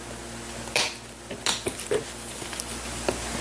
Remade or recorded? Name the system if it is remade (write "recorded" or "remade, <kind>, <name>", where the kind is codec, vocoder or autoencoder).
recorded